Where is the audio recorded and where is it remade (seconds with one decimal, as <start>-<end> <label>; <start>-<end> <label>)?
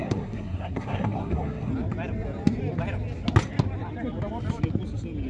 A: 0.0-1.7 remade; 1.7-5.3 recorded